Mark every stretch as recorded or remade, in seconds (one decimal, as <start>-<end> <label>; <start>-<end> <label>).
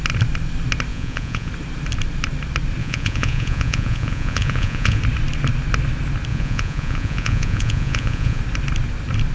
0.0-0.9 recorded; 0.9-1.5 remade; 1.5-2.8 recorded; 2.8-5.0 remade; 5.0-6.3 recorded; 6.3-8.4 remade; 8.4-9.3 recorded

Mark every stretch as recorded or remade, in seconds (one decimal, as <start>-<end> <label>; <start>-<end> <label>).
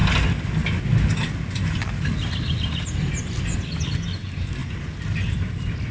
0.0-5.9 recorded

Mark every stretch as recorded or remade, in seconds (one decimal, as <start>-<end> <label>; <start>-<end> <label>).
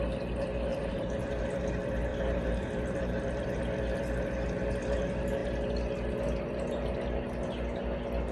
0.0-0.7 recorded; 0.7-1.4 remade; 1.4-2.1 recorded; 2.1-3.6 remade; 3.6-8.3 recorded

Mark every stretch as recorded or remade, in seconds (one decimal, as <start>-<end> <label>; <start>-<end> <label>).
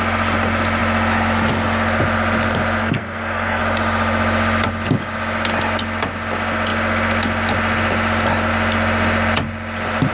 0.0-2.8 recorded; 2.8-3.6 remade; 3.6-10.1 recorded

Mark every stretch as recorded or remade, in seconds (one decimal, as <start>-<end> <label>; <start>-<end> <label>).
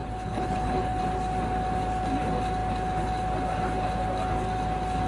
0.0-1.0 remade; 1.0-5.1 recorded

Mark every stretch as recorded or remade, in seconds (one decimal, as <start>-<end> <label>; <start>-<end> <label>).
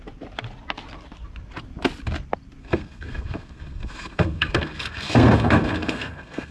0.0-2.6 recorded; 2.6-6.5 remade